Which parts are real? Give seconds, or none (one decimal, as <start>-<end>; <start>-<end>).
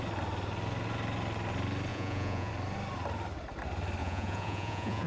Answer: 0.0-1.9; 2.5-4.0